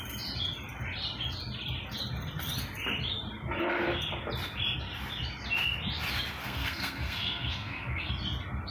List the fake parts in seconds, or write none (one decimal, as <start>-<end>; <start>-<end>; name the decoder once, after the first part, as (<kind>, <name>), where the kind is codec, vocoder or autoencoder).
6.4-8.1 (codec, SNAC)